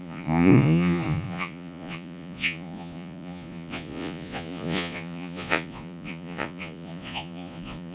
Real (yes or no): no